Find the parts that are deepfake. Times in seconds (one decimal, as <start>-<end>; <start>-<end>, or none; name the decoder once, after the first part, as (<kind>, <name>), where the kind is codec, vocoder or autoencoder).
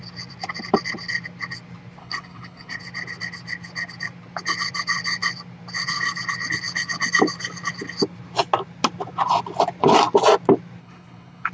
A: 2.0-2.8 (codec, HILCodec); 10.8-11.5